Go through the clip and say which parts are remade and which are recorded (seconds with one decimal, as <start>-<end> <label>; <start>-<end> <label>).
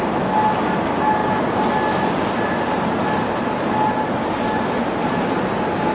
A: 0.0-5.9 recorded